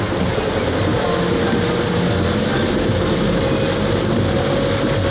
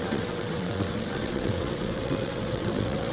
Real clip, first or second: first